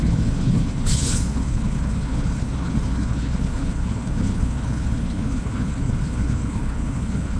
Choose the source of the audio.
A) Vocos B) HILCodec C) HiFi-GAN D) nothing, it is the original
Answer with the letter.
B